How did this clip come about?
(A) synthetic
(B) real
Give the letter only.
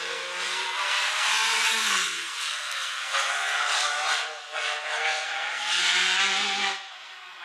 A